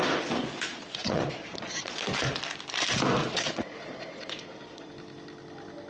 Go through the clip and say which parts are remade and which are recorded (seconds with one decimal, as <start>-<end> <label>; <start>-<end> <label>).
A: 0.0-0.5 recorded; 0.5-2.0 remade; 2.0-3.2 recorded; 3.2-4.9 remade; 4.9-5.9 recorded